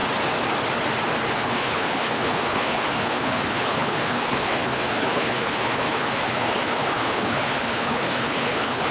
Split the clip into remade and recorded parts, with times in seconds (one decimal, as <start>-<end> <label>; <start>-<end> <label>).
0.0-1.3 recorded; 1.3-8.9 remade